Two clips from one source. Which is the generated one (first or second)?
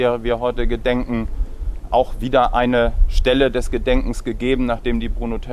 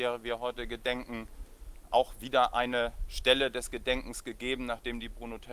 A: first